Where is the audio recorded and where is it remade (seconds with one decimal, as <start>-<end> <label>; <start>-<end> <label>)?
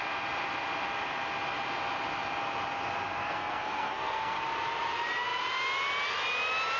0.0-3.2 recorded; 3.2-4.4 remade; 4.4-6.8 recorded